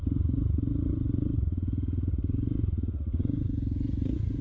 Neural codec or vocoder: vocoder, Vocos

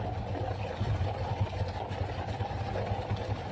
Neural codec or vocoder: none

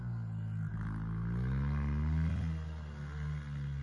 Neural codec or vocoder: none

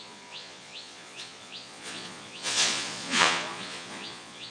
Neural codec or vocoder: vocoder, Vocos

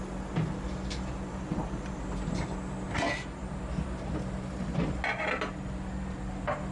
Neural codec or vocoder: none